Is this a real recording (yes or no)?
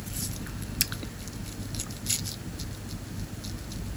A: yes